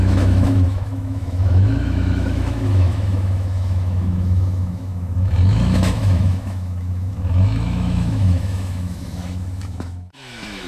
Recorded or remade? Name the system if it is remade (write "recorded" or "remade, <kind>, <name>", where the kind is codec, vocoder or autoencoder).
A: remade, autoencoder, DAC-VAE